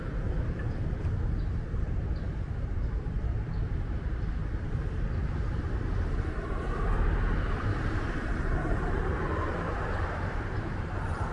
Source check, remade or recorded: remade